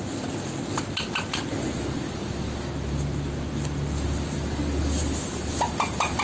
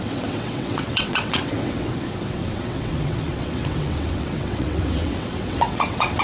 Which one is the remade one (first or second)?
second